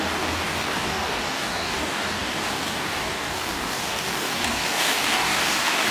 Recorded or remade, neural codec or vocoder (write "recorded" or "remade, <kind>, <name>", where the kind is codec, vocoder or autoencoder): remade, codec, DAC